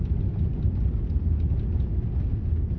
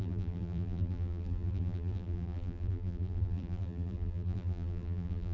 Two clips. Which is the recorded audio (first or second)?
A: first